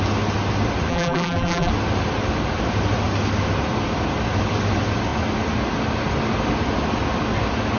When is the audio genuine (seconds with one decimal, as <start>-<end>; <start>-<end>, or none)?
0.0-0.9; 1.7-7.8